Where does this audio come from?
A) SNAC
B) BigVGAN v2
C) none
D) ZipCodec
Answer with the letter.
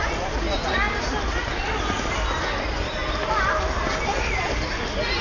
C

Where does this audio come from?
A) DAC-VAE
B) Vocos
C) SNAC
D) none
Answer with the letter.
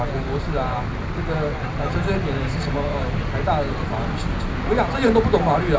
D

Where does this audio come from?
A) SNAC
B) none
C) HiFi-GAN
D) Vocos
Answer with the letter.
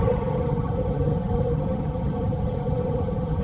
C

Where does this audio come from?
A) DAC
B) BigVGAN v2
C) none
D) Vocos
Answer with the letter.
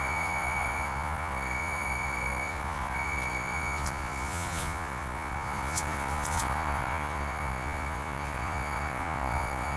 D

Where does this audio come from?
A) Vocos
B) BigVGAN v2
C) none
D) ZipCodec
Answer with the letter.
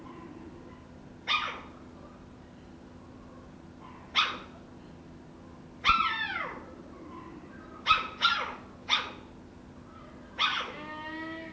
C